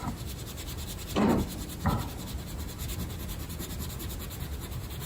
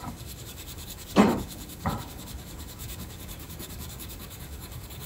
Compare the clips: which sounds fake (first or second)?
second